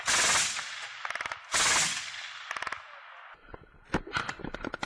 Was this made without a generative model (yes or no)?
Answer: yes